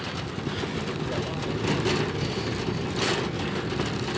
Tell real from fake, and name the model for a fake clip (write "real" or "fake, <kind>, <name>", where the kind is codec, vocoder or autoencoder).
real